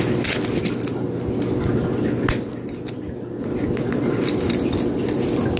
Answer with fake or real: real